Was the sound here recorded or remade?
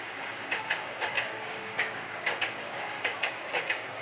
remade